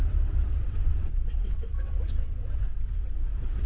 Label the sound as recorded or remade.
remade